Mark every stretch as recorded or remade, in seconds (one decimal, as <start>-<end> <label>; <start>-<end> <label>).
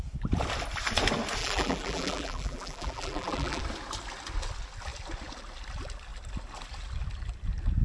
0.0-1.4 recorded; 1.4-3.6 remade; 3.6-7.8 recorded